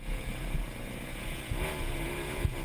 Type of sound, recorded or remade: remade